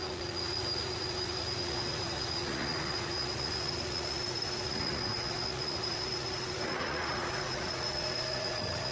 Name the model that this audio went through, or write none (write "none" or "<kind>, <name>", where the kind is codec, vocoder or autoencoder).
vocoder, Vocos